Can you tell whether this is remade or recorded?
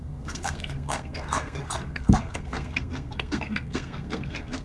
remade